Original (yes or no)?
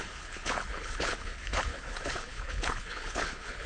no